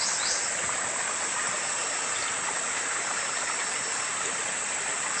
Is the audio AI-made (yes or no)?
no